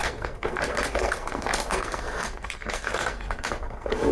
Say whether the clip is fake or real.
fake